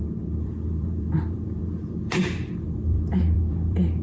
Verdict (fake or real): fake